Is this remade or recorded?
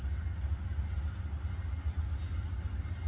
recorded